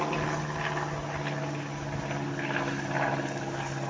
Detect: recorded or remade recorded